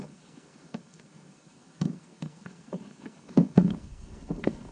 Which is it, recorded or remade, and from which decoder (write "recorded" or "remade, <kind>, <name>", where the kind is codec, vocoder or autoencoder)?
remade, codec, SNAC